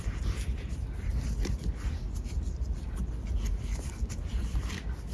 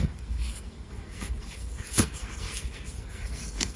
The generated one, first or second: second